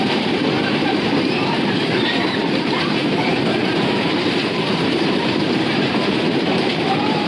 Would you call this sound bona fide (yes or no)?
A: no